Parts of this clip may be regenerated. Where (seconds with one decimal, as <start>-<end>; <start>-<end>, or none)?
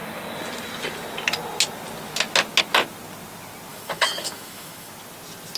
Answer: 3.7-4.9